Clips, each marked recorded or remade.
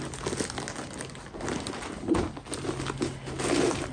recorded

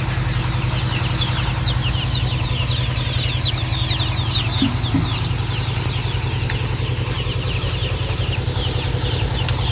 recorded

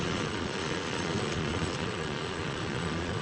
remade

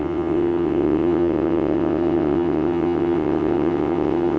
remade